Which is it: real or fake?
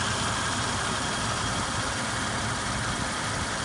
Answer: real